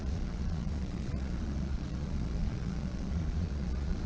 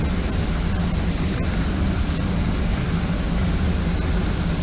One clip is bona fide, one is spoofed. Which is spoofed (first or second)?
first